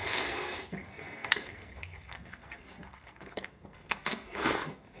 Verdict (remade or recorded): remade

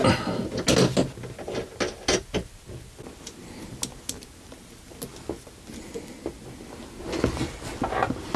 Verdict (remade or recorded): recorded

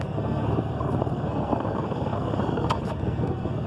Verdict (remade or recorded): remade